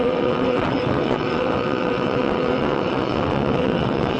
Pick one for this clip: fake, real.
fake